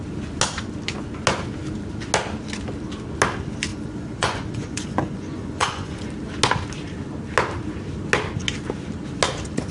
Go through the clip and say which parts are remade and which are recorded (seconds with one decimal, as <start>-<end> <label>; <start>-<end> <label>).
0.0-3.7 recorded; 3.7-6.1 remade; 6.1-9.7 recorded